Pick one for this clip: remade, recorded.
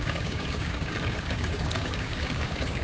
remade